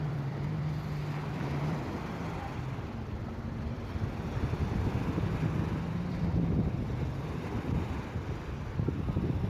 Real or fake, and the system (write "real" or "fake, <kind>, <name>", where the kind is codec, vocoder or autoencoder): fake, vocoder, BigVGAN v2